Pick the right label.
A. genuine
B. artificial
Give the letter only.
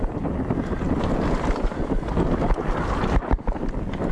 A